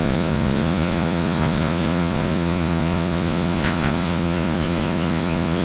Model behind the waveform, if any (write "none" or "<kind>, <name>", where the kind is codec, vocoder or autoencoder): vocoder, Vocos